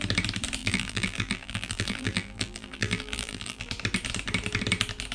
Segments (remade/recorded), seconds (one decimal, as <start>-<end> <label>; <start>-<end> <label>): 0.0-0.6 recorded; 0.6-3.7 remade; 3.7-5.1 recorded